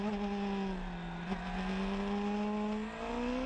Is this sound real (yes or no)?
yes